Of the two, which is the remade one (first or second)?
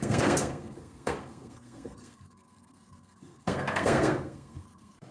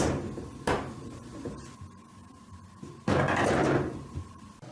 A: first